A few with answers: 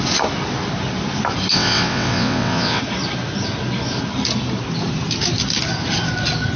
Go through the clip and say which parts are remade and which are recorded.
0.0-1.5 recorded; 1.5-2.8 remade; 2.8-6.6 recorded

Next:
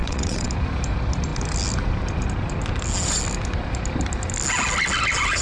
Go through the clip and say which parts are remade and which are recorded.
0.0-0.5 remade; 0.5-5.4 recorded

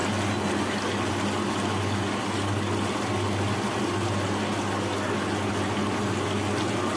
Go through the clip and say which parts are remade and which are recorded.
0.0-7.0 recorded

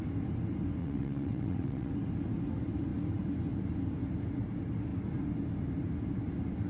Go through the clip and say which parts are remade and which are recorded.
0.0-0.8 recorded; 0.8-1.9 remade; 1.9-6.7 recorded

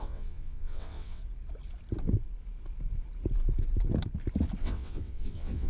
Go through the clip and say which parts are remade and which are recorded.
0.0-1.2 remade; 1.2-4.6 recorded; 4.6-5.7 remade

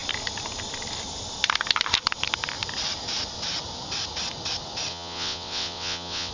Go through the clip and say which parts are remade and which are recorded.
0.0-4.9 recorded; 4.9-6.3 remade

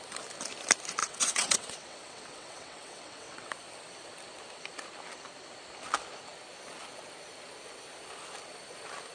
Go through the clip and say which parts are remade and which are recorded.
0.0-1.0 recorded; 1.0-3.5 remade; 3.5-9.1 recorded